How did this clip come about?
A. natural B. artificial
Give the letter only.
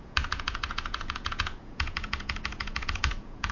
B